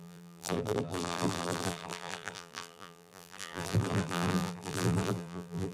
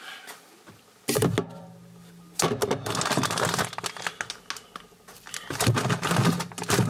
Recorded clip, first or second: second